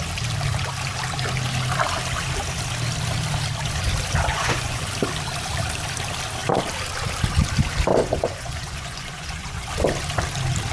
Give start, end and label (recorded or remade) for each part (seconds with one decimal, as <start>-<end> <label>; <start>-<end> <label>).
0.0-4.3 recorded; 4.3-4.9 remade; 4.9-8.0 recorded; 8.0-9.7 remade; 9.7-10.7 recorded